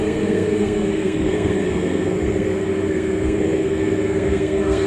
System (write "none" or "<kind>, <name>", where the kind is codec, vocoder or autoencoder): codec, SNAC